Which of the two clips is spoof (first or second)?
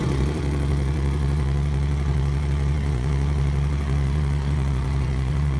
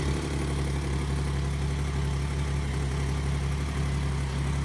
first